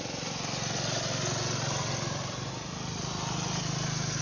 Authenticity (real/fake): real